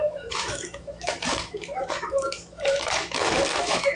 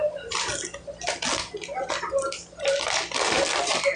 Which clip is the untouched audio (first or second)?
second